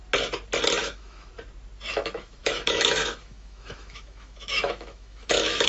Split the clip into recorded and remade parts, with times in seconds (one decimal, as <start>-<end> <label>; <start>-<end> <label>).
0.0-0.8 recorded; 0.8-1.3 remade; 1.3-1.9 recorded; 1.9-5.7 remade